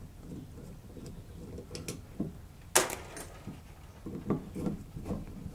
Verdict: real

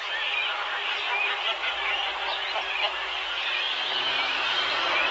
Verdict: real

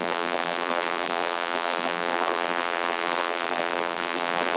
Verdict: fake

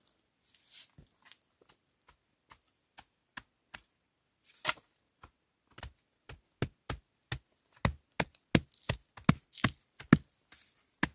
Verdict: real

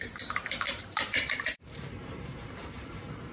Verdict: fake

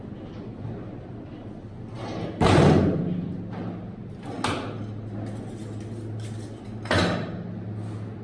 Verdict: real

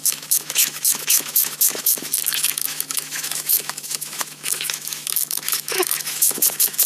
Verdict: fake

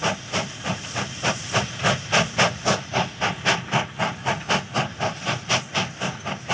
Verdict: real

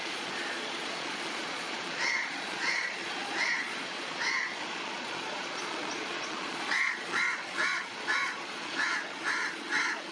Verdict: fake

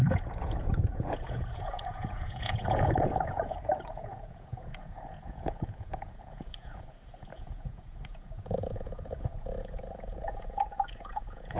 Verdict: fake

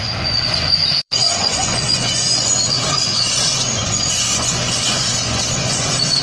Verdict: fake